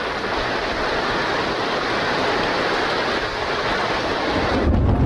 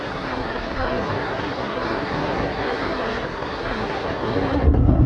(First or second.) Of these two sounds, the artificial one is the second